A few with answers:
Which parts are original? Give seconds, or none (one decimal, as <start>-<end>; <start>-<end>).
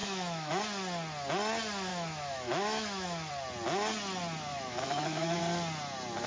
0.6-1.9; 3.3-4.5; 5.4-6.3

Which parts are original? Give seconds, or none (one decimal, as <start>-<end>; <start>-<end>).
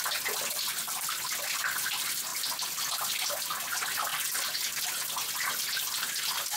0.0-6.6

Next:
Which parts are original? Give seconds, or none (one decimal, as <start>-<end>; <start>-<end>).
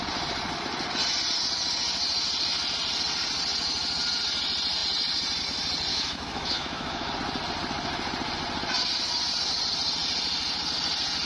0.0-5.9; 7.1-11.3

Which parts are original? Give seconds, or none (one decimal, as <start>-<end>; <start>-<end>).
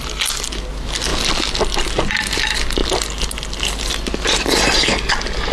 0.0-5.5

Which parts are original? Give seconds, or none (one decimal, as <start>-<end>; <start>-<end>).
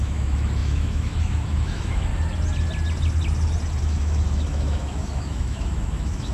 2.1-3.8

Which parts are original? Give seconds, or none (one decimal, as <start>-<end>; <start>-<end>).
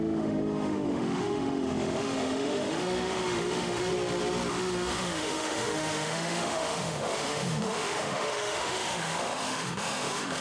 3.9-4.5